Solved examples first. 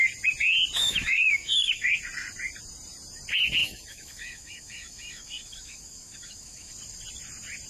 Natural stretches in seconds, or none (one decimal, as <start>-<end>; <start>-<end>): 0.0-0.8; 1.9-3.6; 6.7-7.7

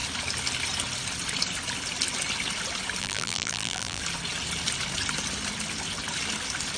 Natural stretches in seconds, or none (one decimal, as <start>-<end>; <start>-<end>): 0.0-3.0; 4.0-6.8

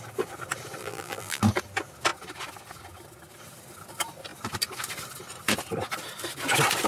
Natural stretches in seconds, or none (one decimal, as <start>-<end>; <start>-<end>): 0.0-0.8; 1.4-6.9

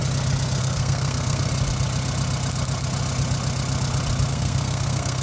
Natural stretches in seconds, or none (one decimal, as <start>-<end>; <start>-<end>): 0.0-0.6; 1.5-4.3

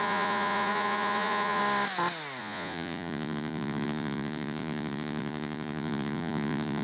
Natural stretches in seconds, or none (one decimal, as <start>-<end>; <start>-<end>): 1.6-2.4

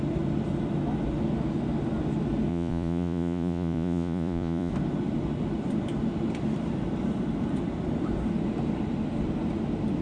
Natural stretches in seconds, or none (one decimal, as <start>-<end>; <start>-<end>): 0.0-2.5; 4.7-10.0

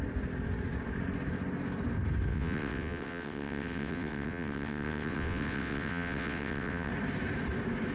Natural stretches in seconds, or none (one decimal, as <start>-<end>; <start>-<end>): 0.0-2.3; 6.9-7.9